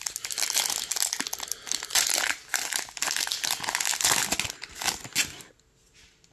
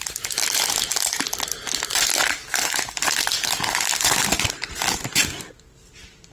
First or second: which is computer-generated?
second